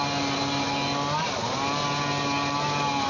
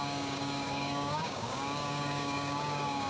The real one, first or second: first